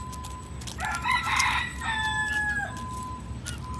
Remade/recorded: recorded